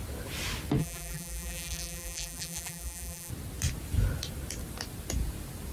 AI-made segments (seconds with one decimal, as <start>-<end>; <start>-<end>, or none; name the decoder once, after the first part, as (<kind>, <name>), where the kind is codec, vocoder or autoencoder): 0.8-3.3 (vocoder, BigVGAN v2)